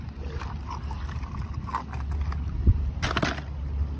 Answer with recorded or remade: recorded